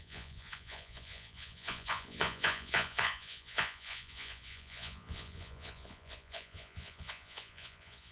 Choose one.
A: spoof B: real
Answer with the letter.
A